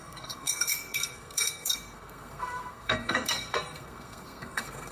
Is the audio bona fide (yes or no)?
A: no